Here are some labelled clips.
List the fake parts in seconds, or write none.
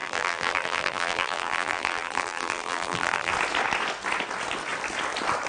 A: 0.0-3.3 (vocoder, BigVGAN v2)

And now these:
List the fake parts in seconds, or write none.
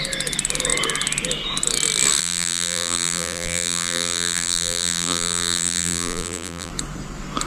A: 2.2-6.7 (vocoder, BigVGAN v2)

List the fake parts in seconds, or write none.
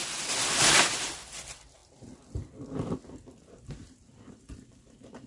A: 1.3-5.3 (vocoder, BigVGAN v2)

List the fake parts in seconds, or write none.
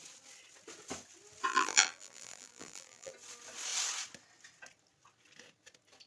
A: 1.5-3.1 (vocoder, BigVGAN v2)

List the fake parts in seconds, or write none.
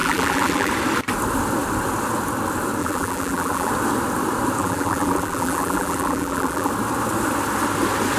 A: 0.0-0.7 (vocoder, BigVGAN v2); 2.8-3.7; 4.6-6.7